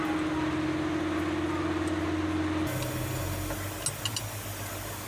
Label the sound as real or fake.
real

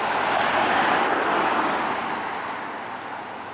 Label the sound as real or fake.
real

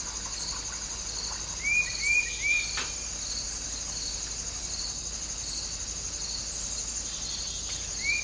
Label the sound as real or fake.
real